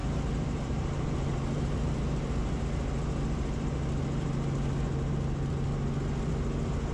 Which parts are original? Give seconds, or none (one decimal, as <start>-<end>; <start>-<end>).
2.6-6.9